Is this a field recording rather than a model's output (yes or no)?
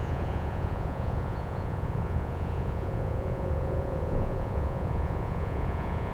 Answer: no